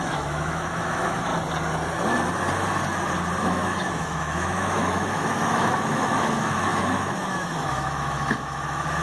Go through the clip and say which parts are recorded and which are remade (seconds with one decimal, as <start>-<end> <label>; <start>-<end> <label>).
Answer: 0.0-1.3 remade; 1.3-3.4 recorded; 3.4-9.0 remade